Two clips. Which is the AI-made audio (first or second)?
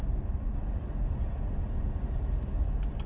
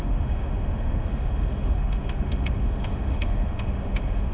second